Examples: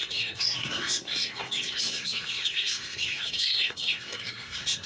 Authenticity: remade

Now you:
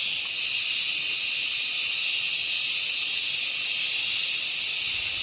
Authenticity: recorded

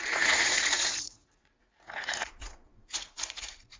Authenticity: remade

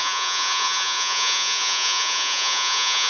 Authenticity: remade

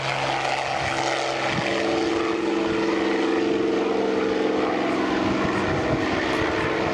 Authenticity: recorded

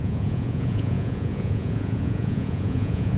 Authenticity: remade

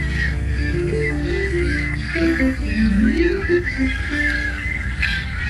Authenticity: remade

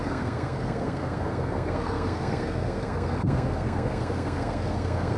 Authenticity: remade